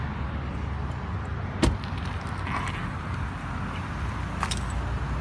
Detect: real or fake real